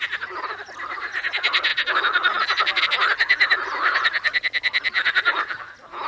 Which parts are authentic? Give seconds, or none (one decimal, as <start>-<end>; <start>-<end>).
0.0-6.1